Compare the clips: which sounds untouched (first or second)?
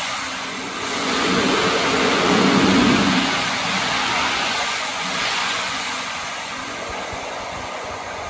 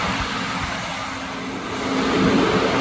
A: second